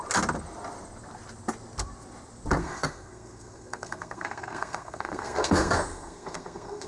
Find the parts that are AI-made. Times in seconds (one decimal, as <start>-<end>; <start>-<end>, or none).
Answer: 2.6-6.9